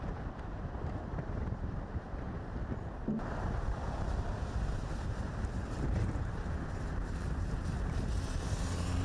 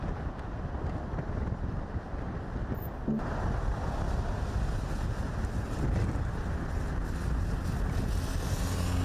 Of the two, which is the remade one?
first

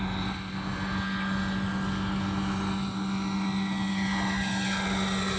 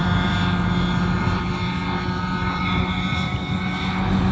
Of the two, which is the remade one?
second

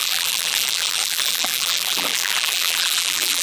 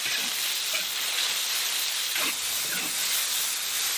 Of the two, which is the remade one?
first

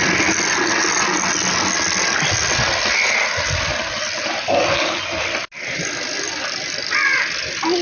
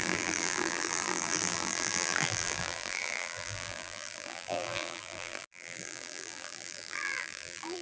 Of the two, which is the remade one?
second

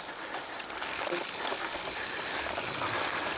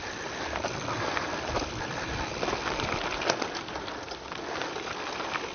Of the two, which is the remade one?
second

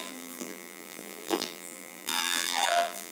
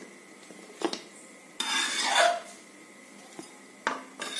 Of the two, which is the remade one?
first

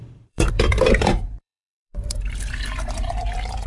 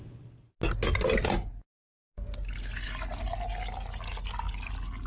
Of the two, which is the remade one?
first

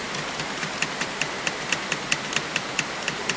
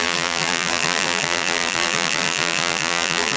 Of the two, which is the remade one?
second